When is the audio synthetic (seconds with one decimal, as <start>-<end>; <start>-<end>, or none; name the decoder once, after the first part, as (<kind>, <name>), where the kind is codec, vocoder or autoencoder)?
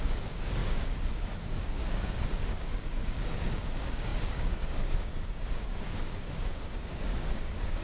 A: 0.0-7.8 (codec, DAC)